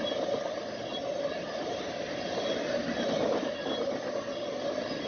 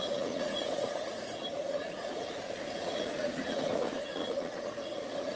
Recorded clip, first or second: first